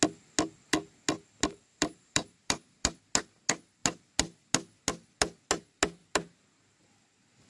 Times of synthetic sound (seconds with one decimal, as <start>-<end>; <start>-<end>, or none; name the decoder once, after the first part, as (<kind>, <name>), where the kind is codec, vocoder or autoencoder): 1.7-3.0 (vocoder, BigVGAN v2)